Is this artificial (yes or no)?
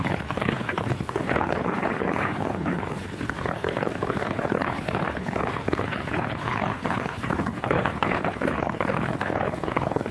yes